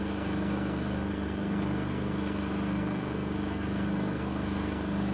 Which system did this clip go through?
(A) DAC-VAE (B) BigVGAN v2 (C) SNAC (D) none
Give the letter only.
C